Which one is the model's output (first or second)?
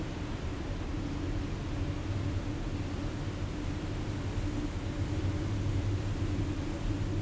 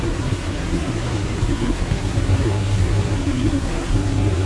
second